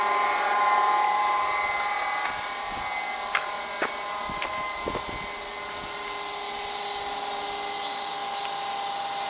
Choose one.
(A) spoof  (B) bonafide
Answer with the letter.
B